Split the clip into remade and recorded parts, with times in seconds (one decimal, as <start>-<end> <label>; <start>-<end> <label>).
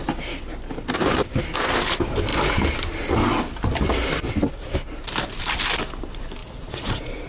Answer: 0.0-6.4 recorded; 6.4-7.3 remade